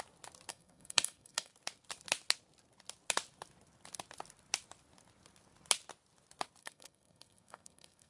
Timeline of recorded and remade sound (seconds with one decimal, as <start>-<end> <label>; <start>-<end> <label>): 0.0-0.5 recorded; 0.5-1.5 remade; 1.5-6.6 recorded; 6.6-8.1 remade